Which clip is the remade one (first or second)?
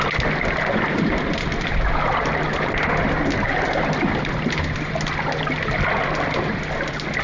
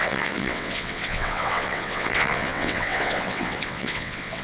second